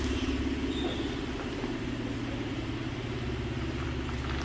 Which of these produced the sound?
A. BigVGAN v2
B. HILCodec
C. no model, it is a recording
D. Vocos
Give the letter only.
A